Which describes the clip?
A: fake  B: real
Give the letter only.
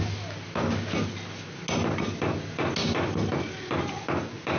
B